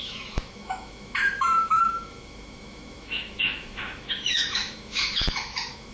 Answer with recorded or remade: remade